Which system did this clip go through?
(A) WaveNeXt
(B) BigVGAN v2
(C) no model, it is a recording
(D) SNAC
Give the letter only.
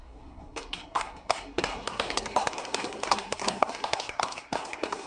D